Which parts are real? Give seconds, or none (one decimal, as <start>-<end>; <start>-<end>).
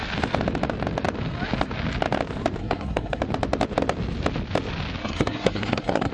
0.0-2.6; 3.2-5.0